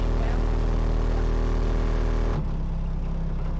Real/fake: real